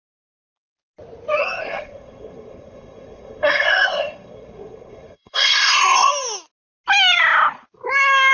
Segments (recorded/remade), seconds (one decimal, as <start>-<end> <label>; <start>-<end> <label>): 0.0-1.4 recorded; 1.4-6.1 remade; 6.1-8.3 recorded